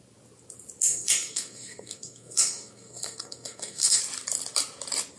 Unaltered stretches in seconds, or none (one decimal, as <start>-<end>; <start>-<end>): 0.0-0.9; 4.0-5.2